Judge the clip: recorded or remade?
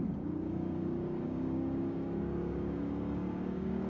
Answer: remade